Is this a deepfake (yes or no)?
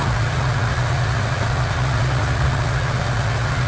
yes